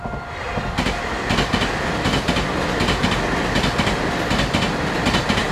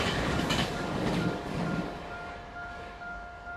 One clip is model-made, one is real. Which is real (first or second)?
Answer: first